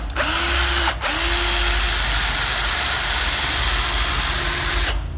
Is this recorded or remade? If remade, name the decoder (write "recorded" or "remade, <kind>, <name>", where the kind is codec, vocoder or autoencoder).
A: recorded